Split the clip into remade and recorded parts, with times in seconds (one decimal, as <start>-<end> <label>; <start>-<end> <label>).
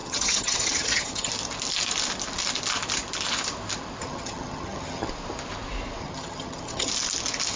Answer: 0.0-1.3 remade; 1.3-4.0 recorded; 4.0-5.1 remade; 5.1-6.0 recorded; 6.0-6.9 remade; 6.9-7.6 recorded